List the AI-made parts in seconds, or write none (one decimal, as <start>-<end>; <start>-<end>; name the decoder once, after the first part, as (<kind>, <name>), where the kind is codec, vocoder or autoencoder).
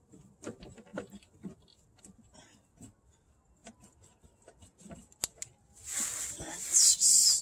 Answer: none